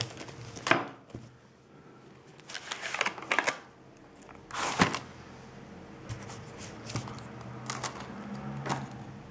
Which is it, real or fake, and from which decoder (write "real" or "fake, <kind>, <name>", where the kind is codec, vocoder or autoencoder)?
real